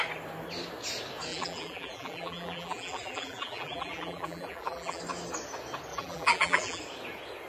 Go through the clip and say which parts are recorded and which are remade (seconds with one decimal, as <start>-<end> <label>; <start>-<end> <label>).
0.0-1.3 recorded; 1.3-5.0 remade; 5.0-5.9 recorded; 5.9-6.8 remade; 6.8-7.5 recorded